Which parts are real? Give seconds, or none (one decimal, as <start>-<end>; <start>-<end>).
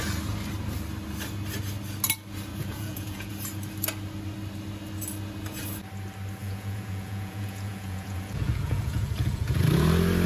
0.0-2.5; 3.3-6.4; 9.6-10.3